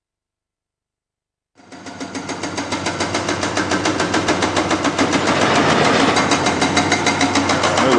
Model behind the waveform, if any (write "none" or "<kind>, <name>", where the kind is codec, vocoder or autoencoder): none